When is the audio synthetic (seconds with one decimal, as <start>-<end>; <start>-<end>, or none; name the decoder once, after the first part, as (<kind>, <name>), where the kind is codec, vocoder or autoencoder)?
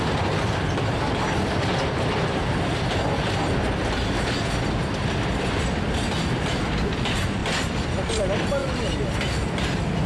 8.6-9.6 (vocoder, BigVGAN v2)